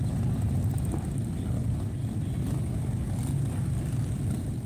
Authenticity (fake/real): real